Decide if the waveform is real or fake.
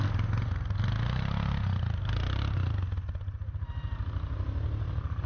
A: real